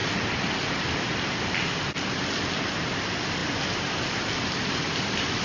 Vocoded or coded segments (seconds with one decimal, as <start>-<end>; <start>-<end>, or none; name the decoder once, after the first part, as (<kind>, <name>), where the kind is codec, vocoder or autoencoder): none